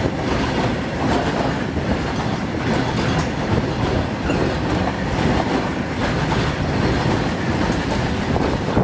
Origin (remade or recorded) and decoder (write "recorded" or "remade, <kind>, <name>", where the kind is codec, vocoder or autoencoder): recorded